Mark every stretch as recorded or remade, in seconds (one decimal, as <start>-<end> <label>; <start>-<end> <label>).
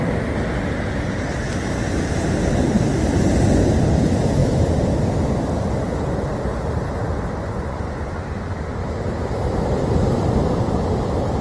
0.0-7.4 recorded; 7.4-8.2 remade; 8.2-11.4 recorded